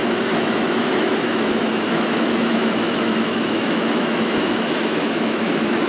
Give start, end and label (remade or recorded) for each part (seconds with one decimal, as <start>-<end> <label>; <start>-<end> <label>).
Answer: 0.0-5.9 remade